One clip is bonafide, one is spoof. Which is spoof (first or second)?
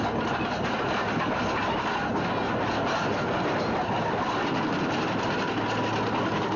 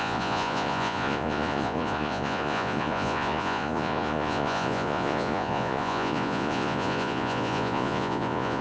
second